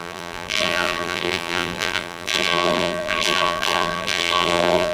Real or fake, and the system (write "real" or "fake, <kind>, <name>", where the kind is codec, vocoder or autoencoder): fake, vocoder, BigVGAN v2